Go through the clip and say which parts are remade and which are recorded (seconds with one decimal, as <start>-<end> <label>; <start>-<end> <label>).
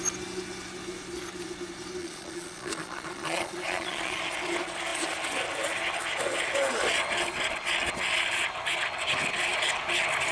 0.0-2.0 recorded; 2.0-4.2 remade; 4.2-10.3 recorded